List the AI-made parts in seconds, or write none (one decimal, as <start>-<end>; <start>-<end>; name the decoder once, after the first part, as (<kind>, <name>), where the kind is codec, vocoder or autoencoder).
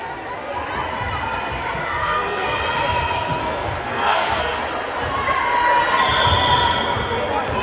2.0-2.6 (codec, SNAC); 3.4-4.6